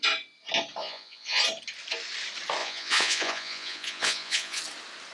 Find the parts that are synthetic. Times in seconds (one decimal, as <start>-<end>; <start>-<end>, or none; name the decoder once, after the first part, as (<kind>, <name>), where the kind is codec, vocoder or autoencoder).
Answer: 0.8-1.4 (vocoder, Vocos); 2.6-4.6